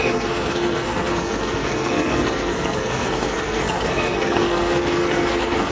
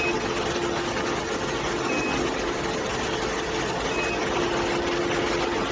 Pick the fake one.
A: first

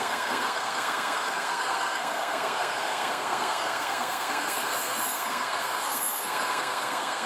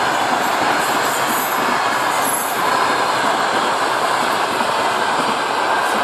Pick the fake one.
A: first